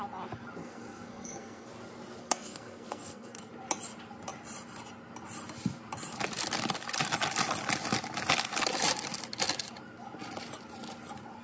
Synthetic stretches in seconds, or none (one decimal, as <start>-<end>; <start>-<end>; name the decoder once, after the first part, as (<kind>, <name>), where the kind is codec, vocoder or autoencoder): 0.6-1.7 (codec, SNAC); 2.2-3.5